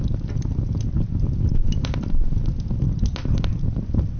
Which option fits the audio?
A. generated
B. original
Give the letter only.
B